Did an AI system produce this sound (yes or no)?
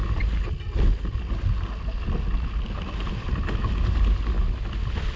no